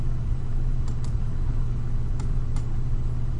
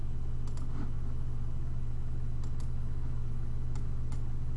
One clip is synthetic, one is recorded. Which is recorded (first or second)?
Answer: second